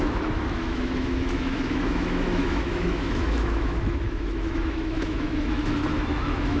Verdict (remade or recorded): remade